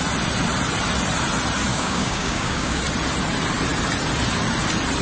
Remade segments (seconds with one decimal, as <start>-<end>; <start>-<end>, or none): 1.7-2.8